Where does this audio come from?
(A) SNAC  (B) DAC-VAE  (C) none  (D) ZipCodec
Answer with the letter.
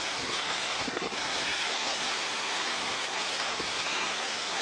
A